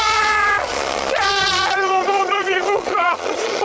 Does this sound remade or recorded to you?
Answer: remade